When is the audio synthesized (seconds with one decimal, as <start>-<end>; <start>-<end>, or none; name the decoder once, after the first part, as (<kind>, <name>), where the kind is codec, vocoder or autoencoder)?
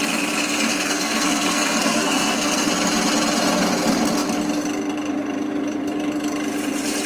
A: 0.7-2.7 (codec, SNAC)